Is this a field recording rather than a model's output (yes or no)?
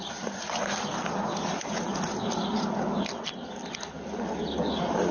yes